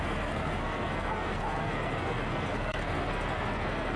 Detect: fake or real fake